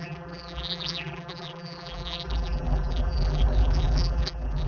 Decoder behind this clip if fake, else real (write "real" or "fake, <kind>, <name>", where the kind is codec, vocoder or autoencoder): fake, vocoder, BigVGAN v2